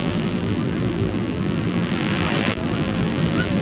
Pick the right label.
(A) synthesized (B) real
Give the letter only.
A